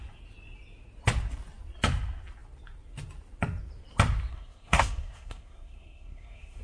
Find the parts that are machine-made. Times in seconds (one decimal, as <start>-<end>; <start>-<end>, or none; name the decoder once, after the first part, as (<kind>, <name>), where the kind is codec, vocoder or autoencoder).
4.3-6.6 (codec, SNAC)